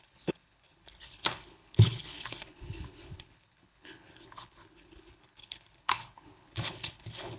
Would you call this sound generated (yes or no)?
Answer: yes